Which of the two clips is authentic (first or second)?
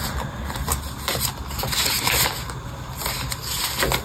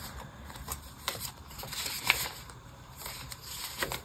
first